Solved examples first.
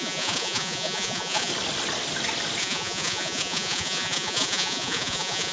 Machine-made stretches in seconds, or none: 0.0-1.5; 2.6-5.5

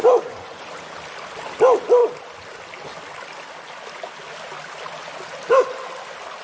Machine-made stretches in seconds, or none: 0.0-0.6

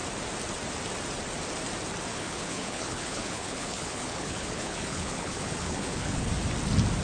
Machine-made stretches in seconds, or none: 2.1-6.3

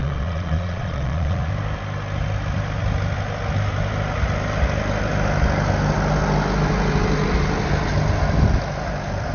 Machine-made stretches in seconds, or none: 0.0-1.5

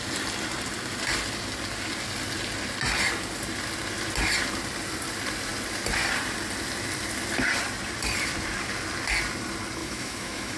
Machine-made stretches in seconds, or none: 9.8-10.6

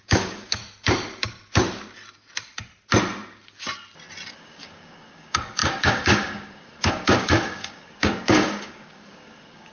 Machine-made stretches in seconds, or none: 0.0-0.6; 4.3-9.7